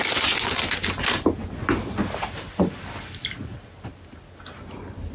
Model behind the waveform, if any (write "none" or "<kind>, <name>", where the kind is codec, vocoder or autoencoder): none